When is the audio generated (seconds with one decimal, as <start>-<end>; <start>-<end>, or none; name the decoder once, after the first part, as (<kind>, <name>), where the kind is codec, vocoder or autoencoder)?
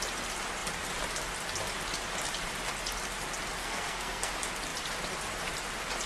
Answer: 3.6-4.3 (codec, SNAC)